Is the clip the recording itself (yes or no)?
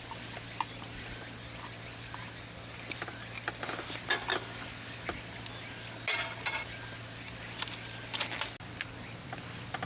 yes